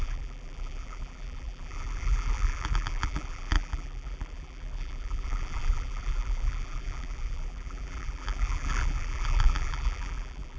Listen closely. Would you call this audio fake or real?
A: fake